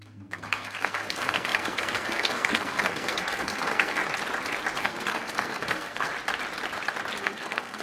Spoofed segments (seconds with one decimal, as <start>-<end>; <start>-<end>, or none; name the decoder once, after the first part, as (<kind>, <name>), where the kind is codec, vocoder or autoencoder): 0.0-4.0 (codec, SNAC); 4.8-6.1; 7.2-7.8